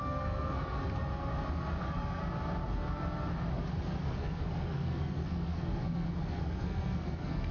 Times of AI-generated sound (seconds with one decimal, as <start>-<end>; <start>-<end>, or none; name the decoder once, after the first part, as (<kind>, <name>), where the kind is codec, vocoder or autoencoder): 0.0-0.8 (codec, SNAC); 1.8-2.2; 4.0-7.5